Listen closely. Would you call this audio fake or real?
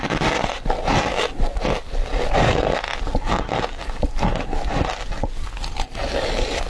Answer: real